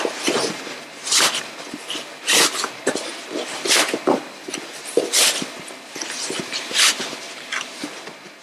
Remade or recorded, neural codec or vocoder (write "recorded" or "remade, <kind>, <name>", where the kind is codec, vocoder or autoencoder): recorded